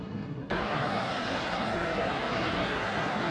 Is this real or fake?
fake